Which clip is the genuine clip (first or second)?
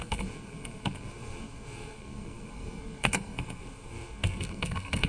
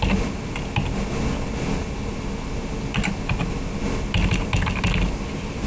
second